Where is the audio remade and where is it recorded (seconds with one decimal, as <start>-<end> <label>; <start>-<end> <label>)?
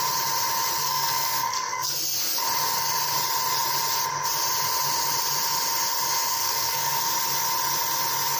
0.0-0.8 recorded; 0.8-1.9 remade; 1.9-6.3 recorded; 6.3-7.1 remade; 7.1-8.4 recorded